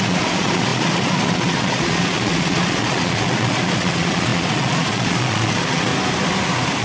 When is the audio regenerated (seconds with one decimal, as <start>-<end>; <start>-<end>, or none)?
0.0-5.9